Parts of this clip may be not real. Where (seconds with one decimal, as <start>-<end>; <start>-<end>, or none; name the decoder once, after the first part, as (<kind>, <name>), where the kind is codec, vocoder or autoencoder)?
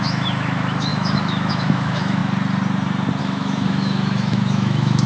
0.0-2.2 (autoencoder, DAC-VAE); 3.2-5.1